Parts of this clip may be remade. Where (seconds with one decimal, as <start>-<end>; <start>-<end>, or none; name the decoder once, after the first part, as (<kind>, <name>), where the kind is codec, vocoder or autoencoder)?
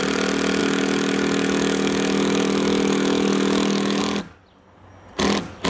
0.6-4.0 (autoencoder, DAC-VAE)